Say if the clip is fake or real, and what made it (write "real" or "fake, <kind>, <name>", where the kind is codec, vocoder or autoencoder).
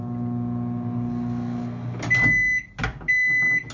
real